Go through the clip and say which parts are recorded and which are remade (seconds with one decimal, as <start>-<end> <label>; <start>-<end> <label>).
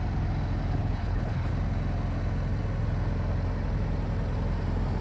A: 0.0-0.8 recorded; 0.8-1.5 remade; 1.5-5.0 recorded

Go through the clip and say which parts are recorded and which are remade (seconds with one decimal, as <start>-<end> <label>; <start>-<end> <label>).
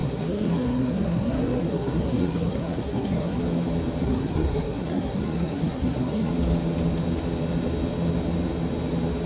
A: 0.0-3.4 remade; 3.4-4.0 recorded; 4.0-6.3 remade; 6.3-9.3 recorded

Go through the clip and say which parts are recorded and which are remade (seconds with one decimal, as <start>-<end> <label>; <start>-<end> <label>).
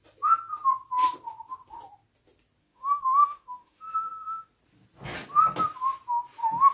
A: 0.0-2.6 recorded; 2.6-4.5 remade; 4.5-6.7 recorded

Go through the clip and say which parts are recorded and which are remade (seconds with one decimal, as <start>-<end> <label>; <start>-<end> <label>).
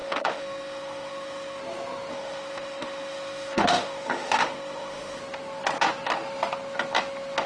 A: 0.0-1.6 remade; 1.6-2.1 recorded; 2.1-5.2 remade; 5.2-7.5 recorded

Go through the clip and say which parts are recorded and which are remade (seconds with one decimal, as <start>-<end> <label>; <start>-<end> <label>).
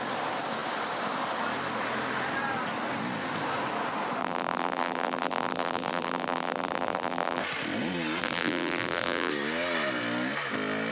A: 0.0-4.2 recorded; 4.2-7.4 remade; 7.4-8.2 recorded; 8.2-9.3 remade; 9.3-10.9 recorded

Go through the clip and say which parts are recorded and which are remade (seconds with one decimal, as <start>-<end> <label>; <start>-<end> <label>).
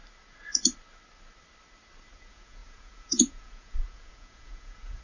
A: 0.0-2.1 recorded; 2.1-5.0 remade